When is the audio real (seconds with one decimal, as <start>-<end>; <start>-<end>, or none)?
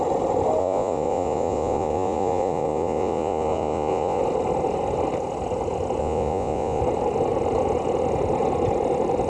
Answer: 0.0-0.6; 4.2-6.0; 6.8-9.3